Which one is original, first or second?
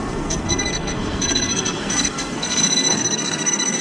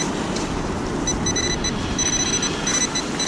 second